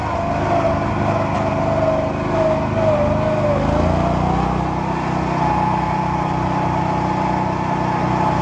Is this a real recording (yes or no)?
yes